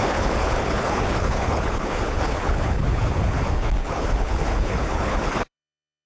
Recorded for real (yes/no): no